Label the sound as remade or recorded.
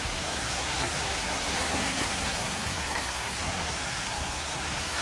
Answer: remade